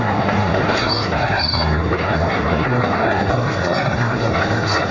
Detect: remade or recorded remade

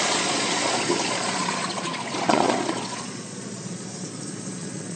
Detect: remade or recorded remade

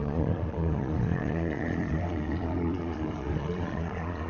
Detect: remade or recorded remade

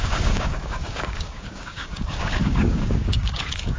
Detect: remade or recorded remade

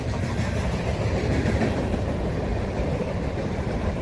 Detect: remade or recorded remade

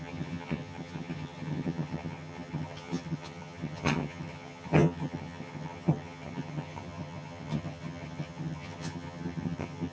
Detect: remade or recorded remade